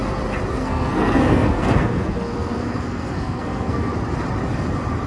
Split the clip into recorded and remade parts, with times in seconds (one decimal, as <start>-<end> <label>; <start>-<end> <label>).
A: 0.0-0.5 recorded; 0.5-3.9 remade; 3.9-5.1 recorded